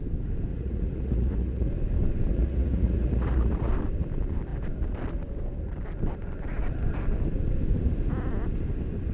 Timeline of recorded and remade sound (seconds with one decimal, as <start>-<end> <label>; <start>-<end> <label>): 0.0-0.5 recorded; 0.5-1.7 remade; 1.7-2.3 recorded; 2.3-3.7 remade; 3.7-9.1 recorded